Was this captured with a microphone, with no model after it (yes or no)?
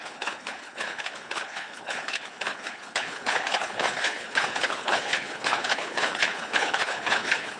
no